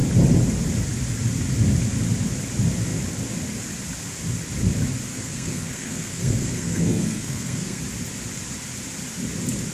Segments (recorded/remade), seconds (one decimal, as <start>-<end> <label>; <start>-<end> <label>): 0.0-5.1 recorded; 5.1-7.8 remade; 7.8-9.7 recorded

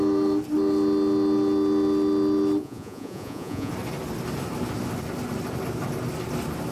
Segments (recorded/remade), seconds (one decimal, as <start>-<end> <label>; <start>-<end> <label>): 0.0-2.6 recorded; 2.6-3.7 remade; 3.7-6.7 recorded

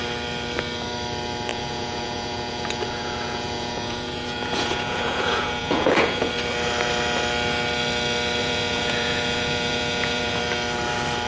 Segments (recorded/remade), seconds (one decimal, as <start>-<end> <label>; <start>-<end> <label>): 0.0-1.5 recorded; 1.5-6.3 remade; 6.3-8.4 recorded; 8.4-10.4 remade; 10.4-11.3 recorded

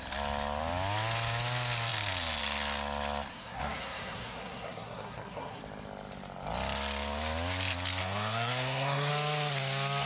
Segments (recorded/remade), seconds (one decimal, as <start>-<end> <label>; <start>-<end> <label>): 0.0-3.3 recorded; 3.3-5.6 remade; 5.6-8.0 recorded; 8.0-9.1 remade; 9.1-10.1 recorded

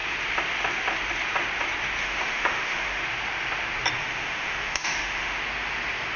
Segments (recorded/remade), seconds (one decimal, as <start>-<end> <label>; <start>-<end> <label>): 0.0-2.0 recorded; 2.0-3.0 remade; 3.0-4.0 recorded; 4.0-5.4 remade; 5.4-6.2 recorded